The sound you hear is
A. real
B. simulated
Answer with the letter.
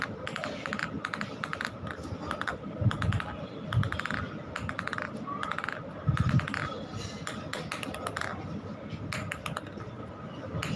A